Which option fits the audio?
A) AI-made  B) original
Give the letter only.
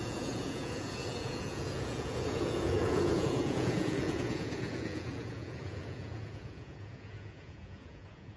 A